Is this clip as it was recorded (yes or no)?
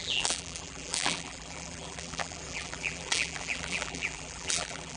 no